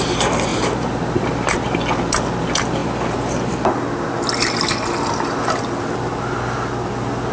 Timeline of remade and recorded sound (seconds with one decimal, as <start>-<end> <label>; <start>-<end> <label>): 0.0-7.3 recorded